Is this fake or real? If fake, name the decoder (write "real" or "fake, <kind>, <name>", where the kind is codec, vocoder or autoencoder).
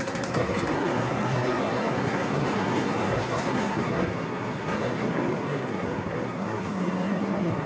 fake, codec, SNAC